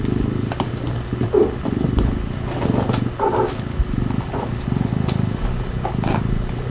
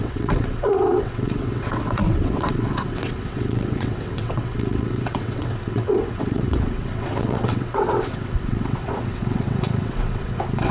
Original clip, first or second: first